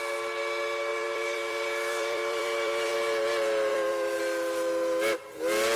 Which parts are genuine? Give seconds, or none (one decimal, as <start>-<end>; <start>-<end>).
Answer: 0.0-0.9; 2.9-3.7; 4.2-5.8